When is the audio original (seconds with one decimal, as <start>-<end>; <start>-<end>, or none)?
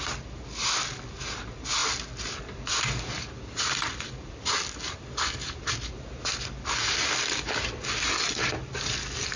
0.0-9.4